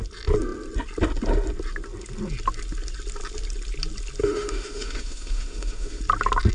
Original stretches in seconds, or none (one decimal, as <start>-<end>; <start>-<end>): 0.0-4.2; 6.0-6.5